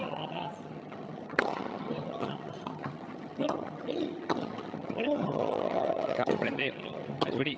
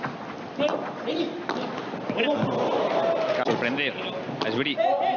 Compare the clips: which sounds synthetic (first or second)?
first